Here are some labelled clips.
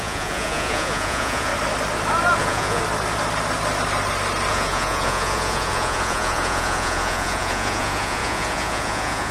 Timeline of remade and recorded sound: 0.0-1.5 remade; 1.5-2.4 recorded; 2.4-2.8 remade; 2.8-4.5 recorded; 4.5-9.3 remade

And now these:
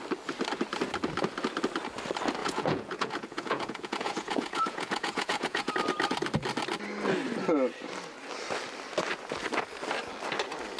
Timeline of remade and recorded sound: 0.0-2.4 recorded; 2.4-5.7 remade; 5.7-10.8 recorded